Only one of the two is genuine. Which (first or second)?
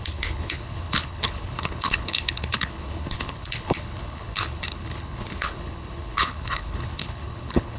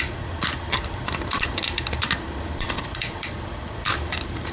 second